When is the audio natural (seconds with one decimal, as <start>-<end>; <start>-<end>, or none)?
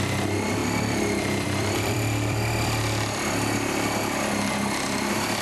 0.0-0.6; 2.7-5.4